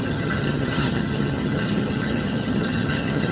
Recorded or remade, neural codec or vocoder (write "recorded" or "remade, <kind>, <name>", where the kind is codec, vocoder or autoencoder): remade, vocoder, HiFi-GAN